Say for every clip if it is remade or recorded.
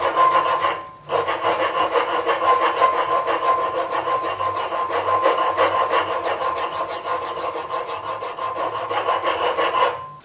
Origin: recorded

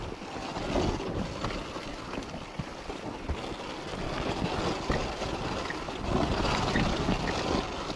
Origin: recorded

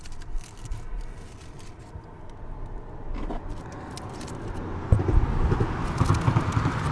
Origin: recorded